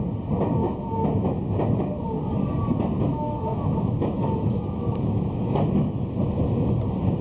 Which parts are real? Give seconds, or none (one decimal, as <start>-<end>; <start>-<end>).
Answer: 0.0-0.6; 1.4-3.1; 5.6-7.2